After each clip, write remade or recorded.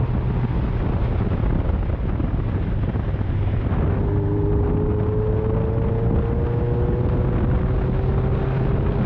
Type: recorded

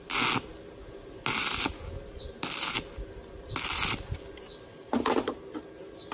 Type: recorded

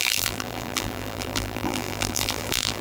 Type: remade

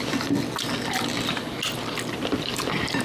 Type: recorded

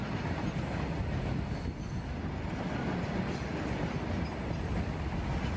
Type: recorded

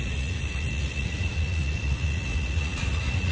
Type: remade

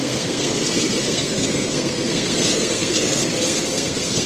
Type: remade